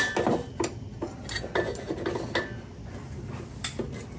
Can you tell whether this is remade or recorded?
recorded